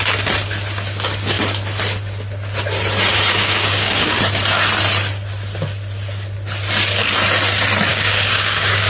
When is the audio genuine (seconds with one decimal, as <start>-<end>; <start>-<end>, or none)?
0.0-3.3; 4.2-7.9